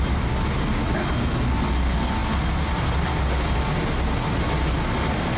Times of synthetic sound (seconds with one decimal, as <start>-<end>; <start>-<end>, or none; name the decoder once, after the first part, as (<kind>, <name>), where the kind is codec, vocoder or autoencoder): none